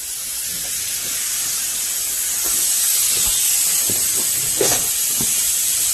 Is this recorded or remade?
recorded